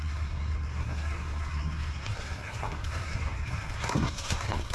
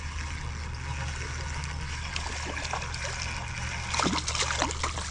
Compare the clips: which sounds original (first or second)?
second